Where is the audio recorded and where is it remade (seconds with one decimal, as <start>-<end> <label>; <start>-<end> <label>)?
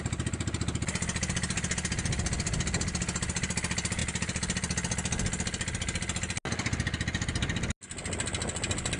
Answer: 0.0-9.0 recorded